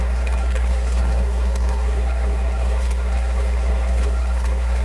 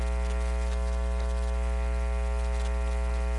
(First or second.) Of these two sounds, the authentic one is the second